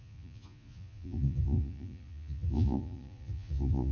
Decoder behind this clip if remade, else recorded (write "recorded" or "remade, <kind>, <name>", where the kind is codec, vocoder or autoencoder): remade, vocoder, Vocos